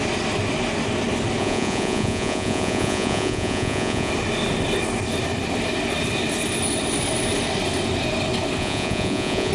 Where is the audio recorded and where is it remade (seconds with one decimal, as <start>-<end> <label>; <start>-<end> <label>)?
0.0-1.4 recorded; 1.4-4.1 remade; 4.1-8.6 recorded; 8.6-9.5 remade